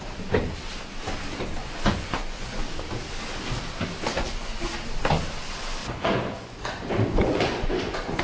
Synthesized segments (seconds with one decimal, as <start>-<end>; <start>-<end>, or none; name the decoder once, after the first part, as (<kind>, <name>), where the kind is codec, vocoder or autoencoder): 1.6-2.6 (vocoder, Vocos); 4.1-4.7; 5.8-8.2